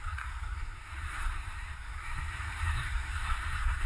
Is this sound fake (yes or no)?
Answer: yes